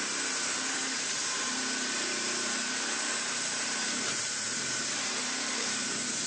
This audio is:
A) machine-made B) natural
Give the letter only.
A